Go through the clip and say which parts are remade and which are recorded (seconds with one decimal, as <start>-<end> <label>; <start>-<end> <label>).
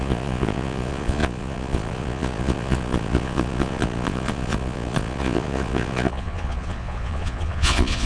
0.0-8.1 remade